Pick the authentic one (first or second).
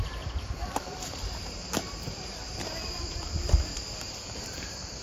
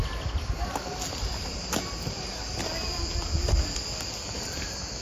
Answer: second